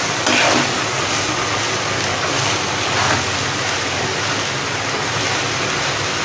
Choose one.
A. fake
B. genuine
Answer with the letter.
B